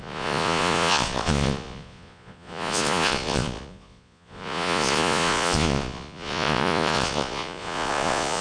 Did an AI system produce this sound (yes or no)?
yes